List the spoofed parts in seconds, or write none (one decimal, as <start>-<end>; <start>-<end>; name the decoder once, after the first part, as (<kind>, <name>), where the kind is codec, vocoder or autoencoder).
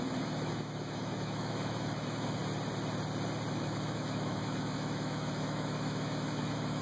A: 0.0-2.4 (autoencoder, DAC-VAE); 3.5-6.8